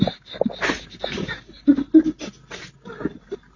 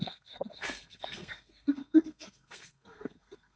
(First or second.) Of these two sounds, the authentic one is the first